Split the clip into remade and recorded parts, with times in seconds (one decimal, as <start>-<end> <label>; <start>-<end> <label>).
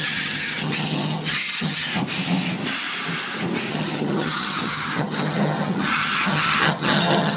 0.0-1.9 remade; 1.9-3.7 recorded; 3.7-7.4 remade